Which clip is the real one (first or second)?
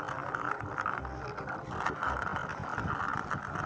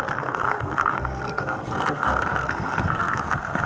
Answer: first